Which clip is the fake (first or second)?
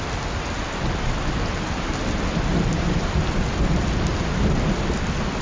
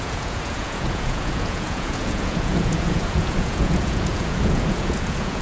second